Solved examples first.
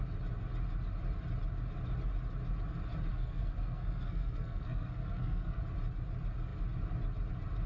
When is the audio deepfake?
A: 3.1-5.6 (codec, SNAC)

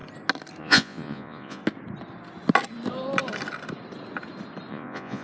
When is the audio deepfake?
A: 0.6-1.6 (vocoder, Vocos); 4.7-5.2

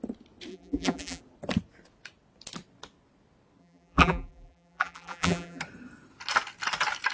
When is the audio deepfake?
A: 0.5-1.2 (vocoder, BigVGAN v2); 3.6-5.6